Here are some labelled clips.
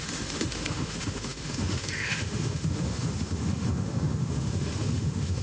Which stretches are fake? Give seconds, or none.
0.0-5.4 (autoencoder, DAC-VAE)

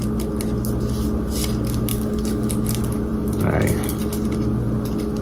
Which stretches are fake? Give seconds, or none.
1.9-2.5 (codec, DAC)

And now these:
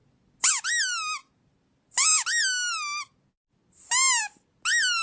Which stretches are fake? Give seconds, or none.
none